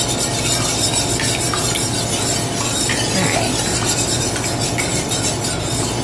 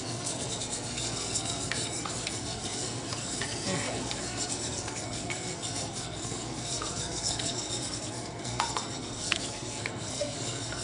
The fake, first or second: second